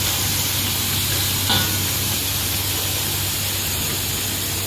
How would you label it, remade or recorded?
recorded